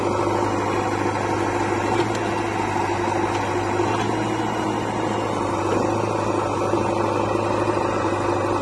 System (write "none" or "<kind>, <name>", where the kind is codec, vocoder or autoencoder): none